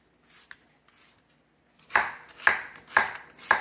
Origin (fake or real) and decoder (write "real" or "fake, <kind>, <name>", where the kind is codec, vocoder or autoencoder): real